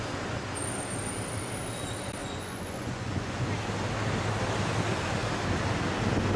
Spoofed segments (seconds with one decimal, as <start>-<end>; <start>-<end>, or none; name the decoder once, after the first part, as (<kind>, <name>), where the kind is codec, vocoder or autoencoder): 2.2-3.5 (vocoder, Vocos)